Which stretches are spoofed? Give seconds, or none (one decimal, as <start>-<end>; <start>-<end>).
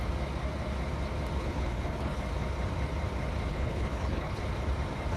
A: 1.4-2.2; 3.5-4.4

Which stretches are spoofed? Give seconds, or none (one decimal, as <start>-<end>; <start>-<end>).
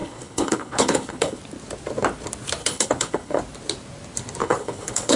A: 0.0-1.4; 2.6-3.4; 4.4-5.2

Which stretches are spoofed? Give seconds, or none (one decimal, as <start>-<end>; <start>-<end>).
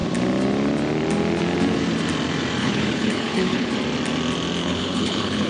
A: 2.6-3.7; 4.6-5.5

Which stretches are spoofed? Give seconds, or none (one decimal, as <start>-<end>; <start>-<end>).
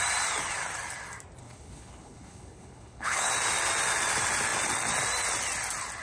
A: 1.4-3.3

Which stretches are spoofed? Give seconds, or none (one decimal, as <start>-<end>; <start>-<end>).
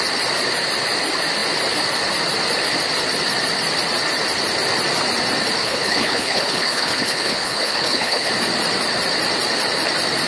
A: 5.6-8.3